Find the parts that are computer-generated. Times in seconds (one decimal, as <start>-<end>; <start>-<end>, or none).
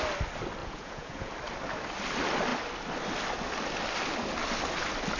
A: 0.6-1.3